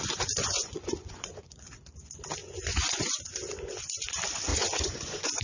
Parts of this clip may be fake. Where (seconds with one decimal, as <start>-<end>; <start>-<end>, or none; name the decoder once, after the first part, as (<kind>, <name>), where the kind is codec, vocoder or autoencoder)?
0.4-1.7 (vocoder, Vocos); 2.4-3.3; 4.5-5.4